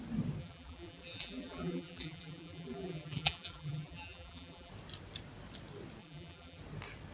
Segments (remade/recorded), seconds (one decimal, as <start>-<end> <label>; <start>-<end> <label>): 0.0-0.4 recorded; 0.4-4.7 remade; 4.7-6.0 recorded; 6.0-6.6 remade; 6.6-7.1 recorded

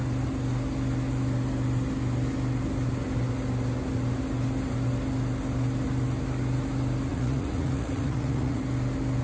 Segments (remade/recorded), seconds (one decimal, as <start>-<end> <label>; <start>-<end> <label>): 0.0-7.1 recorded; 7.1-8.6 remade; 8.6-9.2 recorded

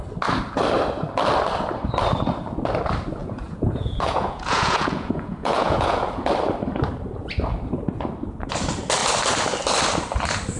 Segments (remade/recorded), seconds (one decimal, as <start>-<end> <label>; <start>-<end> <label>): 0.0-3.2 recorded; 3.2-6.1 remade; 6.1-10.6 recorded

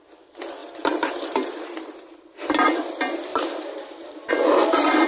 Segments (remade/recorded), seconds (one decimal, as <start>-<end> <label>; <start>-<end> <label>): 0.0-0.6 recorded; 0.6-2.2 remade; 2.2-3.3 recorded; 3.3-4.3 remade; 4.3-5.1 recorded

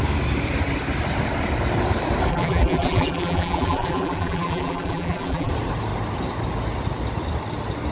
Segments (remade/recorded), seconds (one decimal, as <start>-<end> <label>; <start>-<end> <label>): 0.0-2.3 recorded; 2.3-5.5 remade; 5.5-7.9 recorded

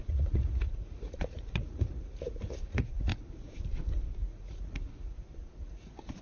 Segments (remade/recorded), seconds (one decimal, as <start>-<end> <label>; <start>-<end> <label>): 0.0-3.1 remade; 3.1-4.2 recorded; 4.2-6.2 remade

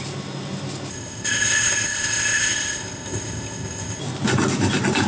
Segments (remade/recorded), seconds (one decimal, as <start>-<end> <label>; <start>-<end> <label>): 0.0-0.9 recorded; 0.9-4.0 remade; 4.0-5.1 recorded

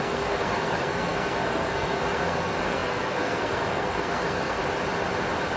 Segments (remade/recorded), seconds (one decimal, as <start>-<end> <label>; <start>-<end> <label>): 0.0-4.6 remade; 4.6-5.6 recorded